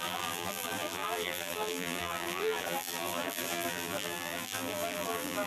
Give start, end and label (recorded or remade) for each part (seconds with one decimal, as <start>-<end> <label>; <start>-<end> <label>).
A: 0.0-5.5 remade